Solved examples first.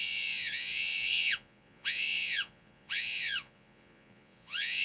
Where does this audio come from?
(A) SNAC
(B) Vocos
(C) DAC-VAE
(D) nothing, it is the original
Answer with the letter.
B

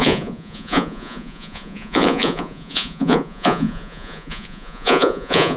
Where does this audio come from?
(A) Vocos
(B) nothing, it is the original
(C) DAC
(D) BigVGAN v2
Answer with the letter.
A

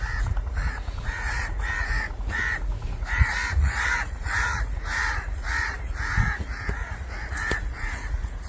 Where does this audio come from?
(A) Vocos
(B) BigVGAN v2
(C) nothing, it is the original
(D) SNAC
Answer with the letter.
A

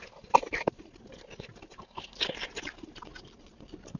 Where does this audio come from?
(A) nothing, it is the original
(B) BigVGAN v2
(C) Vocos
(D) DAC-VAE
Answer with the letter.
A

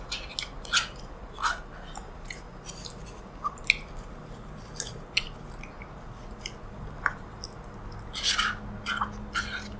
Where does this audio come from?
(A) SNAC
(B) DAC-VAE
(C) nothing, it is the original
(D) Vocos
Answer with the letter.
C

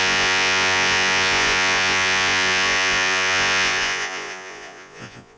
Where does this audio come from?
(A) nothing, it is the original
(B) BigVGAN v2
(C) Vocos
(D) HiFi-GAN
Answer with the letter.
C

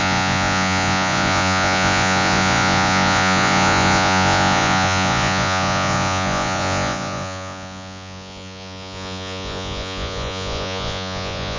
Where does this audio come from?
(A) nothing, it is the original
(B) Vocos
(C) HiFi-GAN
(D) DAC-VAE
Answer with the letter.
B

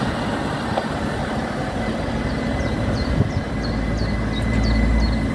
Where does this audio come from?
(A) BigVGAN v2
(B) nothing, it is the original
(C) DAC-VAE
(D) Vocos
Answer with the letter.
B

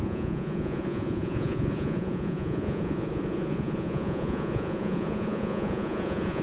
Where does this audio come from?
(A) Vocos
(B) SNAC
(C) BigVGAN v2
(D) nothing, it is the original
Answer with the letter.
A